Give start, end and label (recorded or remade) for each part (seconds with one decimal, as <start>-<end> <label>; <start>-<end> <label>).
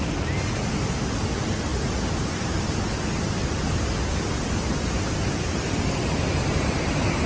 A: 0.0-7.3 recorded